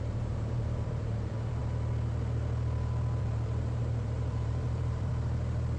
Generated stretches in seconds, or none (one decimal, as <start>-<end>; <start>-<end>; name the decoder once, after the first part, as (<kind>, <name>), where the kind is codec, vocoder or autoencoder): 0.0-1.6 (vocoder, BigVGAN v2); 3.2-5.1